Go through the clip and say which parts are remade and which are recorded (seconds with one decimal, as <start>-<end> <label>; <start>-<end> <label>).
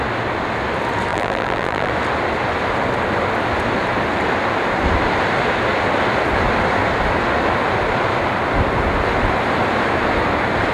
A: 0.0-1.1 recorded; 1.1-1.9 remade; 1.9-10.7 recorded